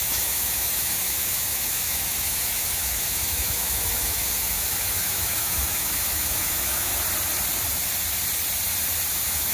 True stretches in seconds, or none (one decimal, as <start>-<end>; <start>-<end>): 6.9-9.1